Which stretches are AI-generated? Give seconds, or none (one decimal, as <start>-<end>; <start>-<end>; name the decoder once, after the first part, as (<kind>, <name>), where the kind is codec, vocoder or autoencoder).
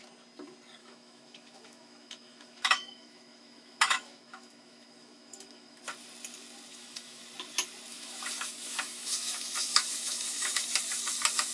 0.8-5.8 (autoencoder, DAC-VAE); 6.7-7.2; 7.9-10.7